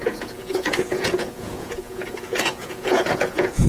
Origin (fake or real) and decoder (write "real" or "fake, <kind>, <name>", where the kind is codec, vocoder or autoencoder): fake, vocoder, Vocos